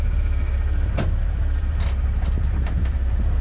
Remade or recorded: remade